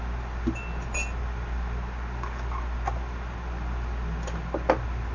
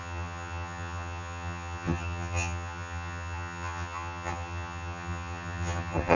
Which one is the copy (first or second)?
second